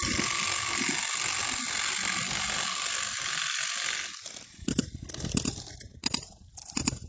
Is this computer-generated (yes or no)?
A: no